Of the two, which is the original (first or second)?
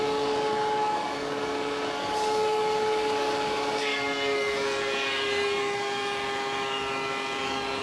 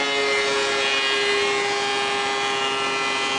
second